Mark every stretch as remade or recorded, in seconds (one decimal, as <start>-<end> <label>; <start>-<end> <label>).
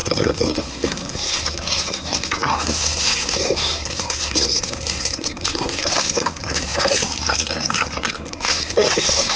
0.0-9.4 remade